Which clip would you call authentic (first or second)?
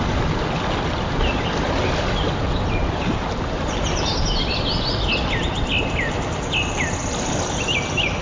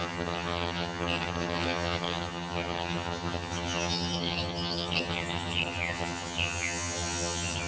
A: first